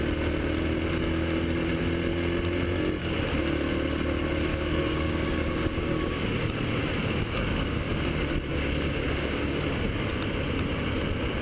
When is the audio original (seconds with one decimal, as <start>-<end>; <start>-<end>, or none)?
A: 0.0-4.5; 6.4-7.0; 7.9-8.5; 9.6-11.4